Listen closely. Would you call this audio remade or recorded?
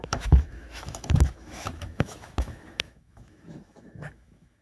remade